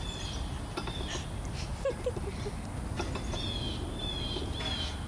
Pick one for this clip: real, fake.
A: real